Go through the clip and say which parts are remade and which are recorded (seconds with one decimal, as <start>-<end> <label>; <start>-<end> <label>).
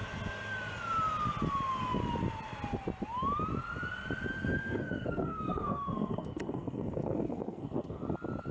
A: 0.0-4.6 recorded; 4.6-8.0 remade; 8.0-8.5 recorded